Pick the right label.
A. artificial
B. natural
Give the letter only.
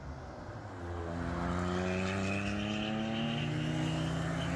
B